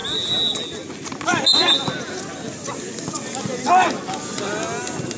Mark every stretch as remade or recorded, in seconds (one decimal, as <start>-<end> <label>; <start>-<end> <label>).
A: 0.0-5.2 recorded